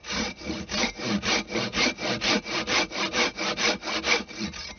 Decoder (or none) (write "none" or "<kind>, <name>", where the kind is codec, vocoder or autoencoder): none